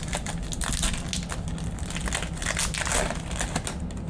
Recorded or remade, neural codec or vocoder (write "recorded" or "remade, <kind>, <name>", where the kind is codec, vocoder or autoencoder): recorded